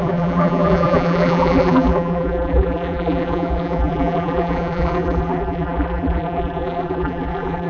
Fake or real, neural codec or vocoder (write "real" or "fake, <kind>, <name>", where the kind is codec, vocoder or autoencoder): fake, vocoder, BigVGAN v2